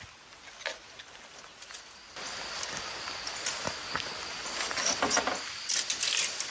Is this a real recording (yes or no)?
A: yes